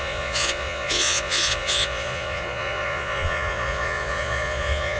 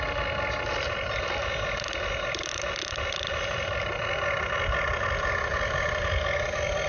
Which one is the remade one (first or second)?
first